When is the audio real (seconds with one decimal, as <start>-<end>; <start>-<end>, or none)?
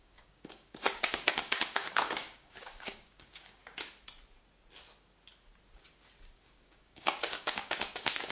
3.6-6.3